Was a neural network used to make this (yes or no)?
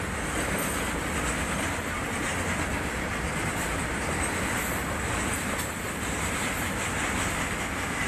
no